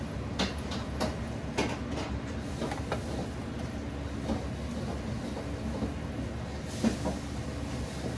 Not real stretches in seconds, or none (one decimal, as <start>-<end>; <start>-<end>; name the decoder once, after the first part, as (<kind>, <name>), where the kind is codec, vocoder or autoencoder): 2.0-2.5 (vocoder, BigVGAN v2)